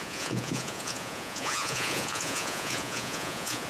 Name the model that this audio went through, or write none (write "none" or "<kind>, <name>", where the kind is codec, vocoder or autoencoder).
vocoder, Vocos